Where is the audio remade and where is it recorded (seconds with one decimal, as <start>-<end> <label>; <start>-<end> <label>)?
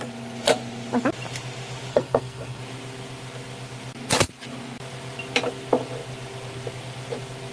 0.0-1.9 recorded; 1.9-2.6 remade; 2.6-7.5 recorded